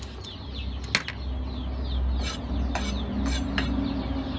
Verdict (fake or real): real